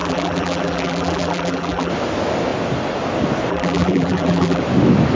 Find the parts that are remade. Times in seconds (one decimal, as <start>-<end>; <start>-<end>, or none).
0.0-1.9; 3.5-4.6